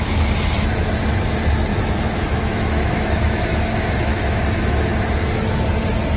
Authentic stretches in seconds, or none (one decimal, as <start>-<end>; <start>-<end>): 0.0-1.7; 4.4-6.2